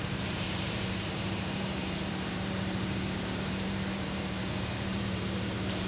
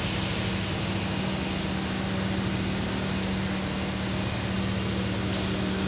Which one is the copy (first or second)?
first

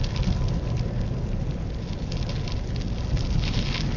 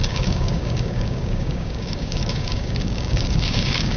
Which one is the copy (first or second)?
second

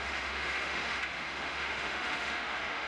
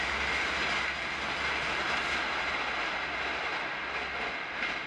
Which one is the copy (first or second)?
first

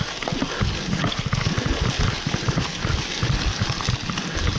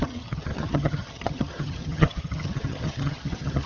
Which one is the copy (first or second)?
second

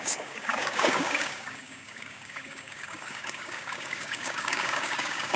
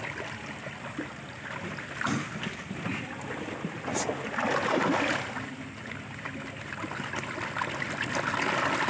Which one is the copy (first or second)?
first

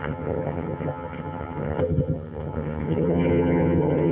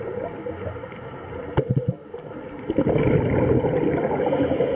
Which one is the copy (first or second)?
first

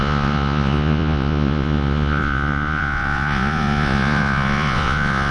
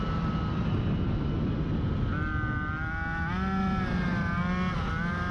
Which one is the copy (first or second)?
first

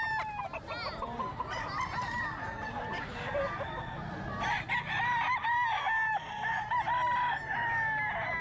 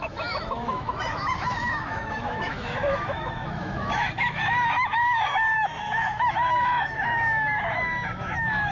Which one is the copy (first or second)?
second